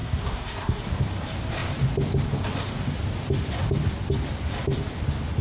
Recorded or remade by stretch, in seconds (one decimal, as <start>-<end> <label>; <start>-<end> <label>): 0.0-0.8 remade; 0.8-5.4 recorded